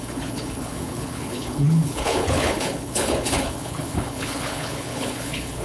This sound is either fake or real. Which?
fake